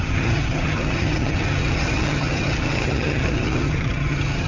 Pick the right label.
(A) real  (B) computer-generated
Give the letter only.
B